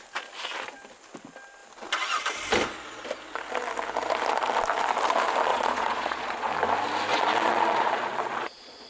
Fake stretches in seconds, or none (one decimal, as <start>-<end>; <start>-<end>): 5.5-6.5; 7.1-8.9